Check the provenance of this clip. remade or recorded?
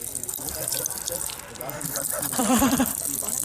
remade